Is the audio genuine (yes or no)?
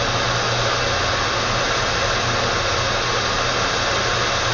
yes